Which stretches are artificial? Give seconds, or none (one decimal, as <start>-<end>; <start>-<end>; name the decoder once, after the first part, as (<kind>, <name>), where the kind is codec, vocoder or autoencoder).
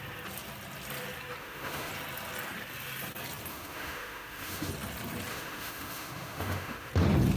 1.4-1.9 (autoencoder, DAC-VAE); 3.5-4.7; 5.3-6.9